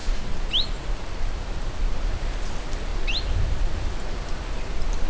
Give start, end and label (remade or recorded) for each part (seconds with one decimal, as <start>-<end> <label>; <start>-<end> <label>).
0.0-5.1 recorded